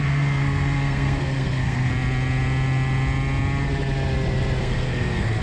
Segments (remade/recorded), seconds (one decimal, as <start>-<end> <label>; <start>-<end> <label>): 0.0-1.9 remade; 1.9-4.6 recorded; 4.6-5.4 remade